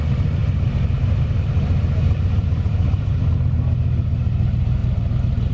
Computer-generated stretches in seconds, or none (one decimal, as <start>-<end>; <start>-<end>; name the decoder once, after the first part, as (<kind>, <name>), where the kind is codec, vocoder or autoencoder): 0.4-3.2 (vocoder, BigVGAN v2)